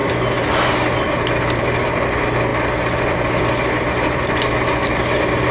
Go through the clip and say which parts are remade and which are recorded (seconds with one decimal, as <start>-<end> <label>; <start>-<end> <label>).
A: 0.0-5.5 recorded

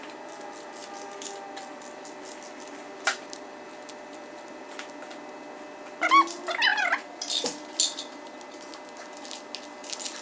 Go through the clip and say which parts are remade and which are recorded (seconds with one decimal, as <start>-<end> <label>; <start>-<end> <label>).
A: 0.0-0.8 recorded; 0.8-4.9 remade; 4.9-6.7 recorded; 6.7-7.3 remade; 7.3-10.2 recorded

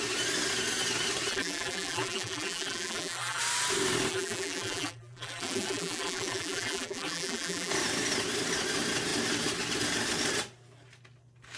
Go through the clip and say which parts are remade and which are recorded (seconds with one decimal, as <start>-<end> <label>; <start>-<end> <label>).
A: 0.0-1.3 recorded; 1.3-3.4 remade; 3.4-4.1 recorded; 4.1-7.7 remade; 7.7-11.6 recorded

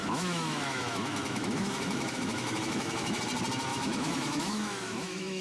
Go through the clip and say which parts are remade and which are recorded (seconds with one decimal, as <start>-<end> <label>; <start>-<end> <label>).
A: 0.0-3.2 remade; 3.2-3.7 recorded; 3.7-5.4 remade

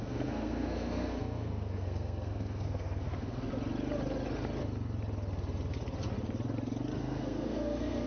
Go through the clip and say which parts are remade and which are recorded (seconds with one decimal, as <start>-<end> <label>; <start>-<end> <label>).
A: 0.0-3.5 remade; 3.5-7.0 recorded; 7.0-8.1 remade